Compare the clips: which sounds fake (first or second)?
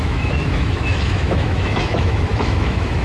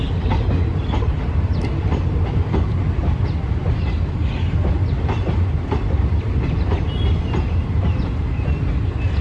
first